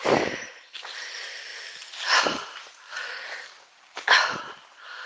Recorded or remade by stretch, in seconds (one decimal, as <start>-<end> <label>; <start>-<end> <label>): 0.0-2.9 recorded; 2.9-4.4 remade; 4.4-5.1 recorded